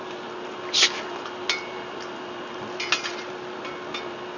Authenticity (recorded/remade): recorded